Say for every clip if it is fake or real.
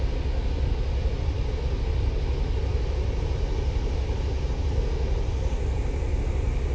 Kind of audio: real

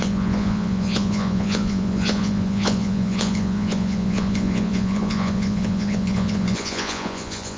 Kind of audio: fake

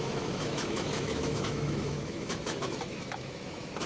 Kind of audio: fake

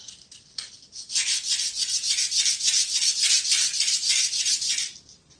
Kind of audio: real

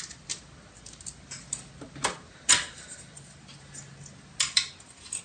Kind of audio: real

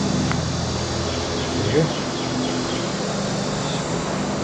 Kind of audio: real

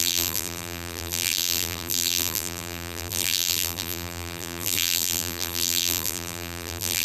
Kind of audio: fake